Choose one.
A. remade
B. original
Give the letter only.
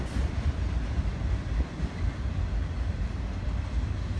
B